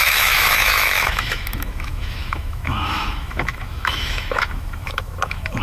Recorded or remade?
remade